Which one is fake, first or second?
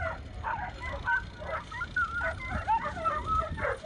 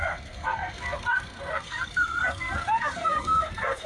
second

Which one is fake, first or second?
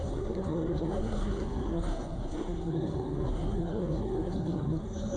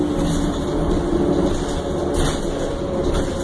first